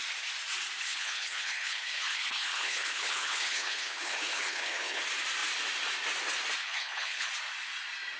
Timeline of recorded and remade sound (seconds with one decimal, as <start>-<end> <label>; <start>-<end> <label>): 0.0-0.8 recorded; 0.8-5.0 remade; 5.0-6.6 recorded; 6.6-7.3 remade; 7.3-8.2 recorded